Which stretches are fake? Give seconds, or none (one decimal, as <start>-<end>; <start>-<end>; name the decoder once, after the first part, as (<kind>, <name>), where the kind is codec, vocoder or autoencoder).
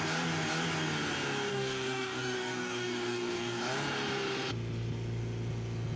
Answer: 1.5-3.6 (codec, DAC)